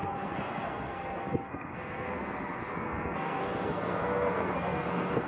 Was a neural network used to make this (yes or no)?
yes